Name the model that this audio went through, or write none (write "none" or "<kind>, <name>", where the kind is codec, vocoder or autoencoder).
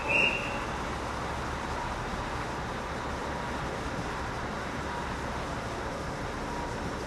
none